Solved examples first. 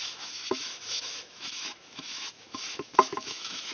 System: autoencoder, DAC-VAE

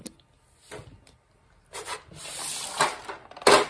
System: none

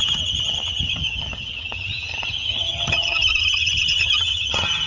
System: vocoder, HiFi-GAN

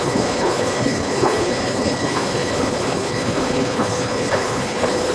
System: codec, HILCodec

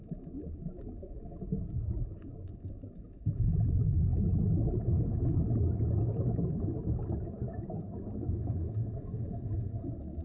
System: autoencoder, DAC-VAE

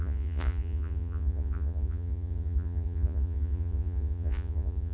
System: vocoder, Vocos